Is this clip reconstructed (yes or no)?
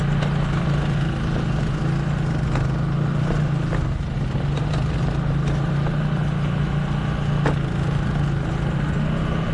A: no